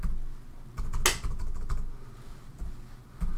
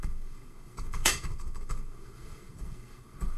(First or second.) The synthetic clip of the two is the second